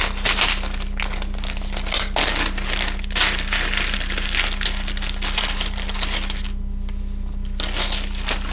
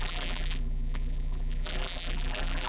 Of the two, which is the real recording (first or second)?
first